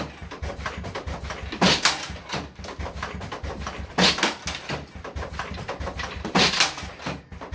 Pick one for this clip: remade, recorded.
recorded